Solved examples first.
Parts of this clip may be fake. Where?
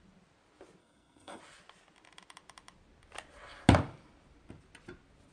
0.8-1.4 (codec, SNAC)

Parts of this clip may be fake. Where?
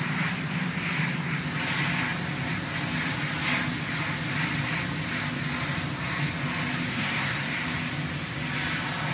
6.9-7.5 (codec, SNAC)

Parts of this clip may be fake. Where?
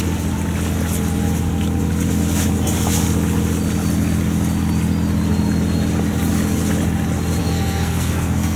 7.4-8.6 (codec, SNAC)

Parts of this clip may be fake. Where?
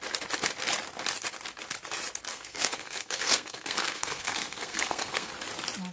2.3-5.3 (codec, SNAC)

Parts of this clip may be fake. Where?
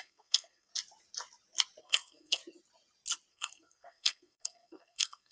0.0-0.7 (codec, SNAC); 1.8-2.4; 3.3-5.3